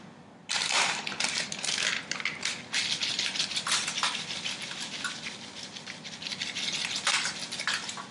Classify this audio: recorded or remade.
recorded